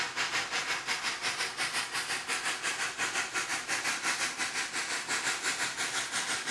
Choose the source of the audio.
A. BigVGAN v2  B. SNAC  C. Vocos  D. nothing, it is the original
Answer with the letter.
D